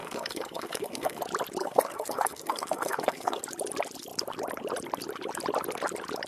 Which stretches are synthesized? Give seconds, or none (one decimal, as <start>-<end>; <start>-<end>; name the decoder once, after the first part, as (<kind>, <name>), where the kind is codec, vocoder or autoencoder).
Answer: 0.0-1.2 (codec, SNAC); 1.6-3.4